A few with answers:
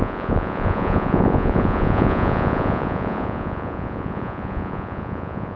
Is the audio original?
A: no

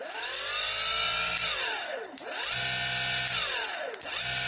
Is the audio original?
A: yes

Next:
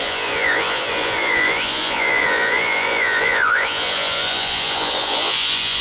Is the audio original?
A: no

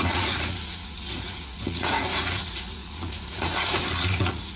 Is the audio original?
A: no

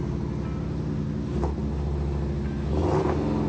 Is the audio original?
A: yes